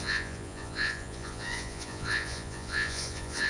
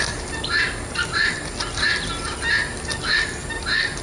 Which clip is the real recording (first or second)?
second